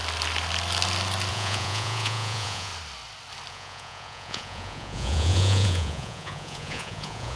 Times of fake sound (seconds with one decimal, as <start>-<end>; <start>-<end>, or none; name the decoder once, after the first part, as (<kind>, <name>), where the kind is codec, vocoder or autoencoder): 1.3-2.7 (vocoder, Vocos); 3.5-7.4